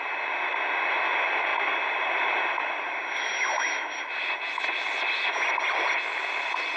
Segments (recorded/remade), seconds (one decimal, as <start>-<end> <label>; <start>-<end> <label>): 0.0-6.8 recorded